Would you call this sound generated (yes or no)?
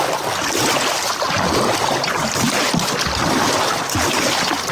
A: no